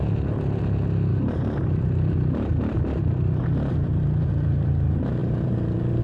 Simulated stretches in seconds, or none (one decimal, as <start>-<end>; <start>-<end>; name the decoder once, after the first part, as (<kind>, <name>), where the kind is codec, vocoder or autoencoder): 1.1-4.7 (vocoder, BigVGAN v2); 5.2-6.0